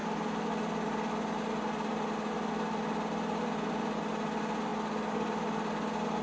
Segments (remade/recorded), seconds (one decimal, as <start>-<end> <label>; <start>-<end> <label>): 0.0-6.2 recorded